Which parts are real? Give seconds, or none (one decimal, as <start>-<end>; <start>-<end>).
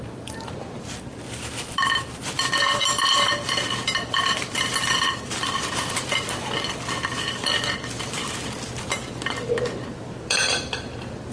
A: 8.2-10.1